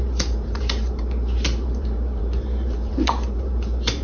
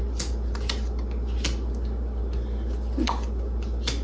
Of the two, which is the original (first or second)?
second